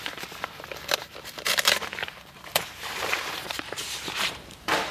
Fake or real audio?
fake